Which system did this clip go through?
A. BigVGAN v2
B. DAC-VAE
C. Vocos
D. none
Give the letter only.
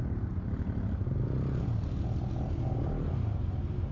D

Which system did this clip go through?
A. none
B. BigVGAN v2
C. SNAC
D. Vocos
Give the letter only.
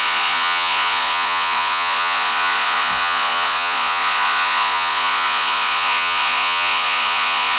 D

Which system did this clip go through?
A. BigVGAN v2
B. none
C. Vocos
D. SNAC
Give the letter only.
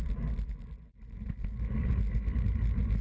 B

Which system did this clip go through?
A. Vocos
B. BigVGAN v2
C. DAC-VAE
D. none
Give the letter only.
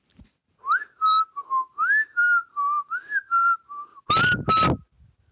D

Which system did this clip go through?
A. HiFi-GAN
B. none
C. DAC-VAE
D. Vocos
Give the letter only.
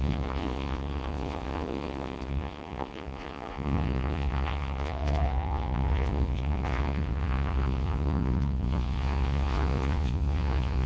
D